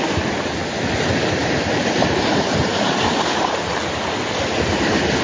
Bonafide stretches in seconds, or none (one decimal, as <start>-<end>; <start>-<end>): 0.0-0.6; 2.3-2.7; 3.4-5.2